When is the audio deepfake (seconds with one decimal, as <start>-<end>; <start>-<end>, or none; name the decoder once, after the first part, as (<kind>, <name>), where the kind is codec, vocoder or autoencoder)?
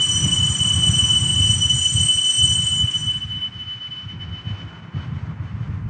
0.0-1.3 (vocoder, BigVGAN v2); 4.8-5.9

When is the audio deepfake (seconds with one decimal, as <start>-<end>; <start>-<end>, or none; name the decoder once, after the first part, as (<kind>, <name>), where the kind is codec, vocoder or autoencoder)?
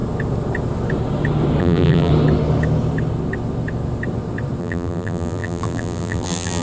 1.6-2.1 (vocoder, BigVGAN v2); 4.6-6.6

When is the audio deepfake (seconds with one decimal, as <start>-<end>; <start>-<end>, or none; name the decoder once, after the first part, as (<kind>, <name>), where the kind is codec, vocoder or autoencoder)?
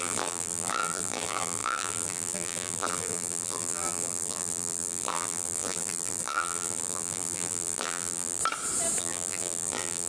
0.0-8.4 (vocoder, BigVGAN v2); 9.0-10.1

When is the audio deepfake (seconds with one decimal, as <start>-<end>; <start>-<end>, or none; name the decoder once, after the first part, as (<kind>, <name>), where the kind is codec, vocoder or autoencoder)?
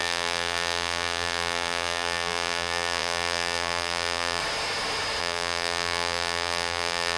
0.0-4.4 (vocoder, BigVGAN v2); 5.2-7.2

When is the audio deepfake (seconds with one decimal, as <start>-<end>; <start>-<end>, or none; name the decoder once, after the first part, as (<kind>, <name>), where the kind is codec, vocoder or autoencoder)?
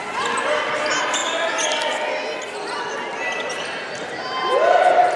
none